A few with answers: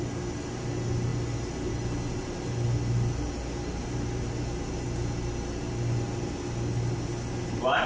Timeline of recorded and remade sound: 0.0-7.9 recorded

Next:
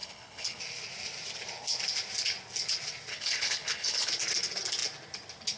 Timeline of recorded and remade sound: 0.0-0.6 remade; 0.6-3.1 recorded; 3.1-4.1 remade; 4.1-5.6 recorded

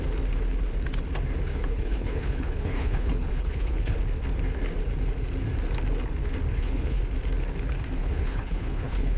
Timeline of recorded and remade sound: 0.0-1.5 recorded; 1.5-4.0 remade; 4.0-6.5 recorded; 6.5-7.0 remade; 7.0-8.0 recorded; 8.0-9.2 remade

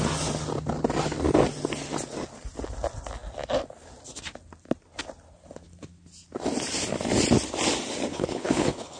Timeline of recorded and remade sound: 0.0-8.1 recorded; 8.1-9.0 remade

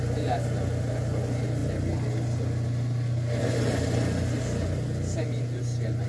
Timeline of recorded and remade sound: 0.0-6.1 recorded

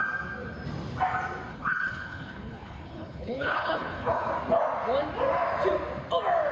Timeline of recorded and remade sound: 0.0-1.5 recorded; 1.5-4.3 remade; 4.3-6.5 recorded

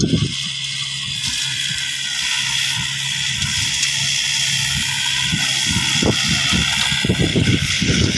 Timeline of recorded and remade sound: 0.0-7.3 recorded; 7.3-8.2 remade